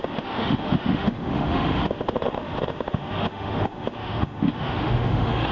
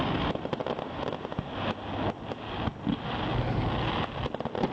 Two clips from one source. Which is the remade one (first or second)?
first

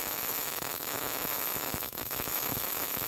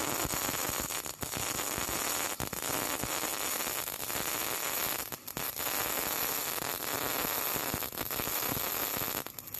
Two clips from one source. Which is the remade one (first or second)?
first